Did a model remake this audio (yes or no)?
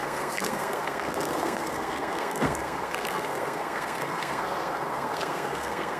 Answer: yes